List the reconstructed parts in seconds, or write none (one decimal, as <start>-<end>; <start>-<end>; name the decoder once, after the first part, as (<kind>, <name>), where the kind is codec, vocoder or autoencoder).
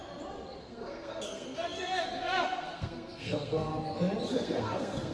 0.6-3.7 (codec, SNAC); 4.3-5.1